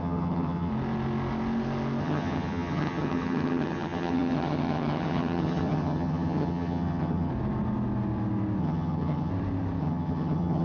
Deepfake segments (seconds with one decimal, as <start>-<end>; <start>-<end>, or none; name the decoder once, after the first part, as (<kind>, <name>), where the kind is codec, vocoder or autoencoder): 0.0-0.7 (vocoder, HiFi-GAN); 2.0-7.3; 8.6-9.3; 9.8-10.6